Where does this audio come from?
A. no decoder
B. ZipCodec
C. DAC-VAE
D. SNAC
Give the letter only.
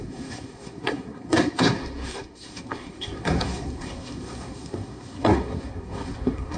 D